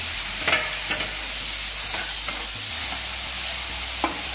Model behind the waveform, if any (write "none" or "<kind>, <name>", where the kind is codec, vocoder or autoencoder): none